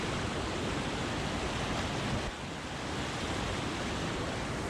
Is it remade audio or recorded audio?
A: recorded